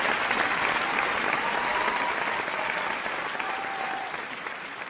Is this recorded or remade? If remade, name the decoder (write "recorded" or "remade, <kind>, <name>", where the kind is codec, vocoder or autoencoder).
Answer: recorded